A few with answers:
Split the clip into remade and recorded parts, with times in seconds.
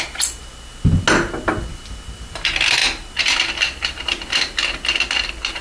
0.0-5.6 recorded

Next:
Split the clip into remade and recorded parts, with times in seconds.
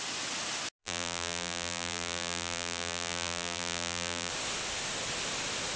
0.0-0.8 recorded; 0.8-4.3 remade; 4.3-5.8 recorded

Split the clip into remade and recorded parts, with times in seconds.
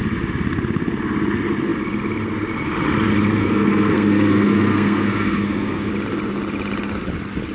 0.0-3.4 recorded; 3.4-5.9 remade; 5.9-7.5 recorded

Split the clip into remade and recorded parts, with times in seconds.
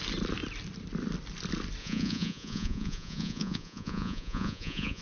0.0-1.8 recorded; 1.8-5.0 remade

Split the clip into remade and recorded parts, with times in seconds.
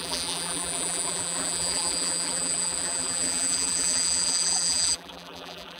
0.0-5.8 remade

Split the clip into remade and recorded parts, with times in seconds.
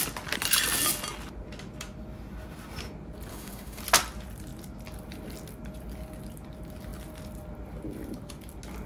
0.0-3.3 recorded; 3.3-3.8 remade; 3.8-8.9 recorded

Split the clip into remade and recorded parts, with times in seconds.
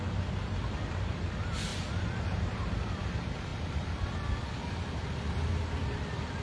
0.0-6.4 recorded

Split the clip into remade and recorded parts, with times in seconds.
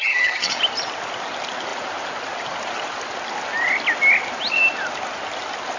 0.0-0.6 remade; 0.6-5.8 recorded